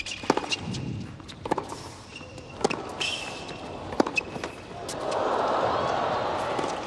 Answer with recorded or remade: recorded